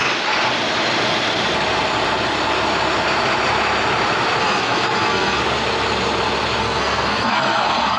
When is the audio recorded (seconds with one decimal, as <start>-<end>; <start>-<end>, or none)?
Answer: 0.0-4.4; 5.4-6.6